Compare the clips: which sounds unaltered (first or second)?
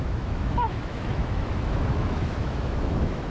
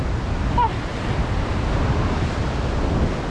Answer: second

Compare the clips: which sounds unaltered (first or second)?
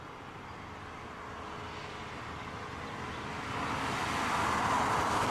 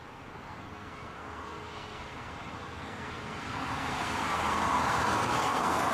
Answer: first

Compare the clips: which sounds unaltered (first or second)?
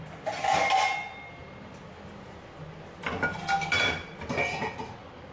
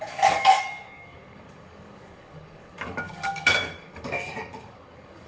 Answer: first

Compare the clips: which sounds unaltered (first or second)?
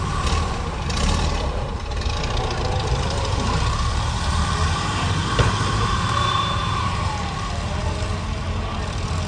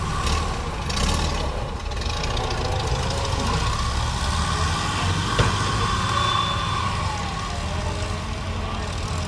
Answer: second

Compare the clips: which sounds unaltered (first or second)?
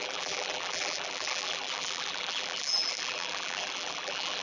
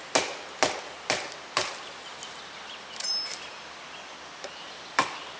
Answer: second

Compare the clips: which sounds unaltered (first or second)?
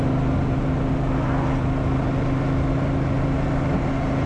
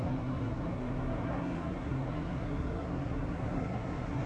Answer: first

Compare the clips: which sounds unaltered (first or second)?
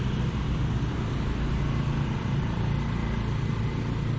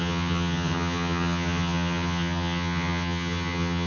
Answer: first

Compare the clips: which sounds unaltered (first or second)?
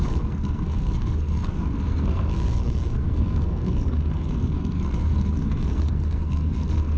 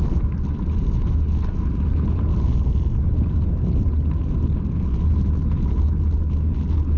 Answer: second